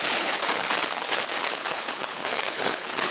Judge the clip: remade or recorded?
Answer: remade